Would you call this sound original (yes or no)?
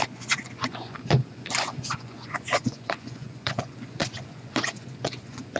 no